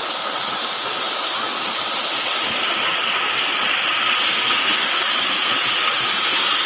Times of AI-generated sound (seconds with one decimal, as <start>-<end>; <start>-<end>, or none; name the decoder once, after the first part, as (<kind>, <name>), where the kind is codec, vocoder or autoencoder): 0.7-1.5 (codec, DAC); 4.3-6.7